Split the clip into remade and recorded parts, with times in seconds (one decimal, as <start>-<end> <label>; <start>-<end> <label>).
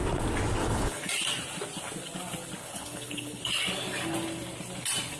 0.0-0.6 recorded; 0.6-1.1 remade; 1.1-2.6 recorded; 2.6-3.4 remade; 3.4-5.2 recorded